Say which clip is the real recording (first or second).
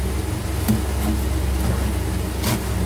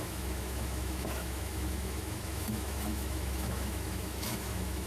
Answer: first